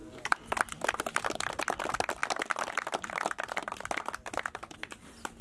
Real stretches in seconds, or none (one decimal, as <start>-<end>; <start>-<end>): 0.0-5.4